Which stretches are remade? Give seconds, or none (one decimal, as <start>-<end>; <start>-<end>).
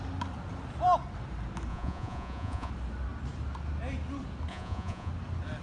1.7-2.7; 4.5-5.1